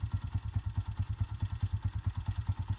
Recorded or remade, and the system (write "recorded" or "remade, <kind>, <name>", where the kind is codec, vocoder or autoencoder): recorded